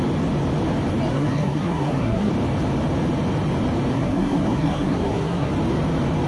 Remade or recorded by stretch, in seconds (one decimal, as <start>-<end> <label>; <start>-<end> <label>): 0.0-1.1 recorded; 1.1-2.3 remade; 2.3-3.9 recorded; 3.9-5.5 remade; 5.5-6.3 recorded